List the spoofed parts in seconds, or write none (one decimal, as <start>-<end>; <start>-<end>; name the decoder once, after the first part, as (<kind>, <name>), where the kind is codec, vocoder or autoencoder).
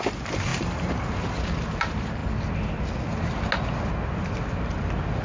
0.5-1.1 (vocoder, BigVGAN v2)